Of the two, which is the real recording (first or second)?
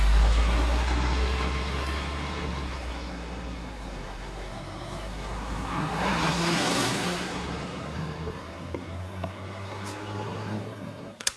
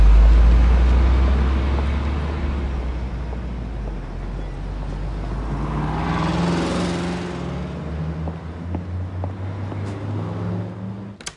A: second